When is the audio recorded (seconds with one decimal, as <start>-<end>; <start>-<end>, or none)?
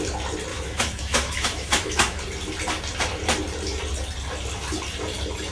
0.0-0.5; 2.2-5.5